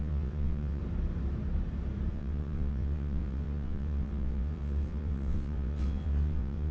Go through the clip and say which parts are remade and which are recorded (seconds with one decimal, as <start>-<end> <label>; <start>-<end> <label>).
0.0-0.8 remade; 0.8-2.1 recorded; 2.1-6.7 remade